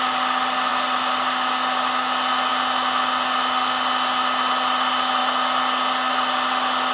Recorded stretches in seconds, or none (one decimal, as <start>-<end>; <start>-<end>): 0.0-6.9